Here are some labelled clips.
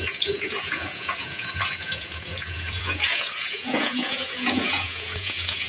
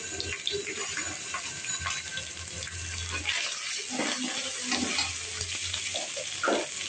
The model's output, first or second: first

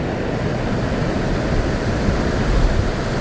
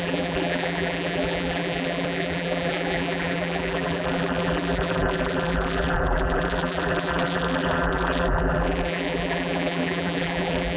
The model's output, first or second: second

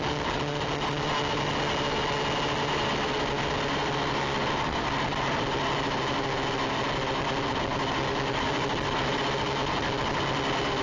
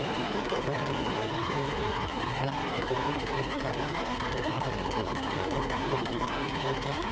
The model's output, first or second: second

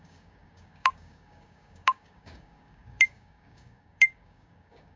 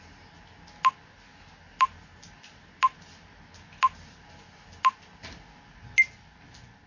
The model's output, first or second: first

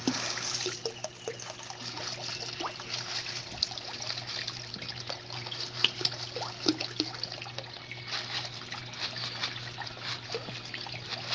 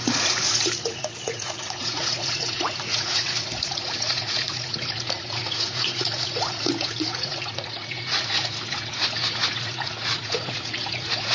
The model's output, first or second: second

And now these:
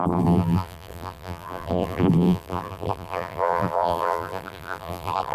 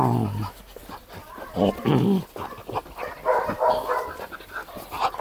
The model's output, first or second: first